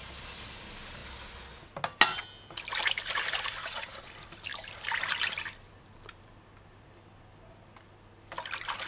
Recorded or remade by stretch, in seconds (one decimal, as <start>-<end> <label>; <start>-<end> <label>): 0.0-3.6 recorded; 3.6-4.1 remade; 4.1-8.9 recorded